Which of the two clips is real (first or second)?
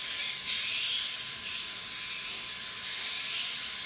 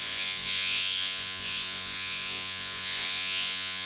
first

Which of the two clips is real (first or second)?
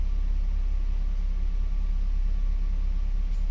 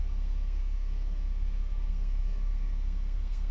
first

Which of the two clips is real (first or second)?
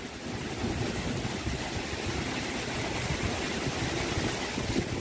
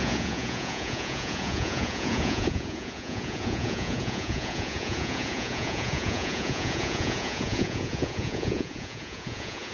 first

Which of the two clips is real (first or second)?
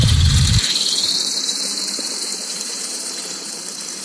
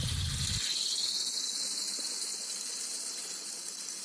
second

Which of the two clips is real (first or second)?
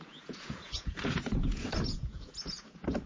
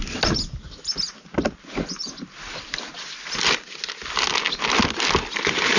second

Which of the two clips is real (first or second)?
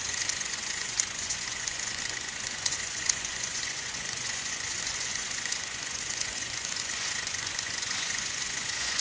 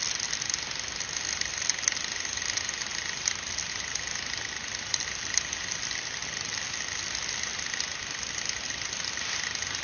second